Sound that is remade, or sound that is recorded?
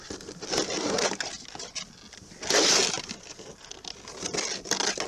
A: recorded